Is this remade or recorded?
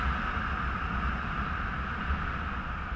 recorded